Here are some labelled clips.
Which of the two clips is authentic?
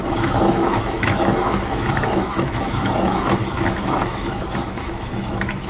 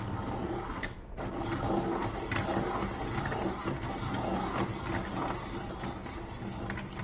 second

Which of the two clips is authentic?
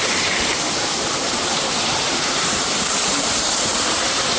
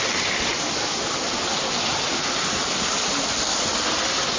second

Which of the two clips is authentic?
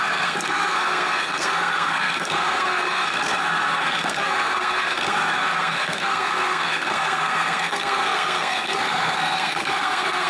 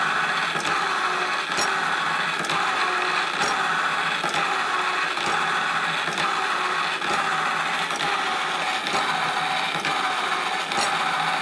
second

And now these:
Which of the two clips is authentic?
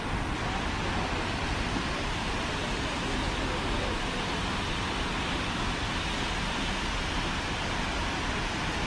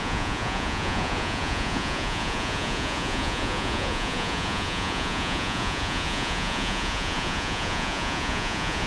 first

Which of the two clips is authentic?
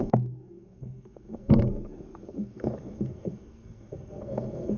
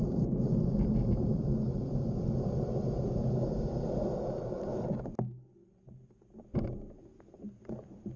second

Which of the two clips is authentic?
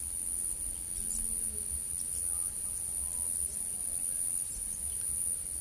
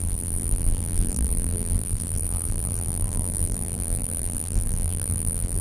first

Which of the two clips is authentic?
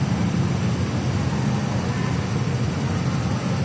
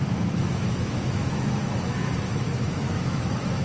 first